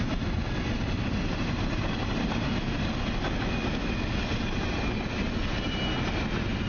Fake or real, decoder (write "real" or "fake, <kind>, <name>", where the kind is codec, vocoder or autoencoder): real